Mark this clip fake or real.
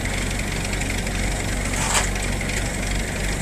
real